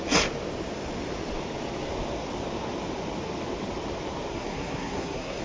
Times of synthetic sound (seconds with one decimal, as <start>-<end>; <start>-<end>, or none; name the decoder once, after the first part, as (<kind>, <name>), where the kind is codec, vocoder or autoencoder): 4.3-5.4 (codec, SNAC)